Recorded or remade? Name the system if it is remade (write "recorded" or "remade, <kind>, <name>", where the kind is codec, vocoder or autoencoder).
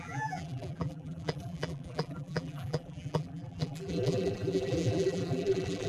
remade, vocoder, BigVGAN v2